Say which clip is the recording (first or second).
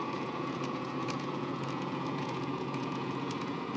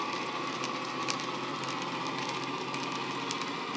second